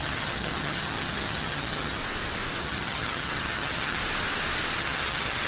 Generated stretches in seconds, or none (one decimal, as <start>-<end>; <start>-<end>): 0.0-2.0; 2.6-4.0; 4.8-5.5